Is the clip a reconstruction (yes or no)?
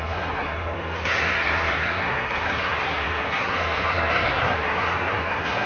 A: yes